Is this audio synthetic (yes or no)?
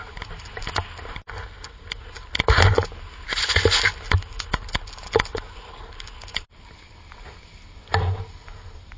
no